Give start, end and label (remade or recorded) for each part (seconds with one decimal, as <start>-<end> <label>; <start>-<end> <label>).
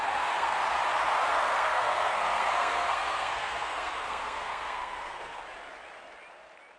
0.0-0.6 remade; 0.6-1.3 recorded; 1.3-5.4 remade; 5.4-6.8 recorded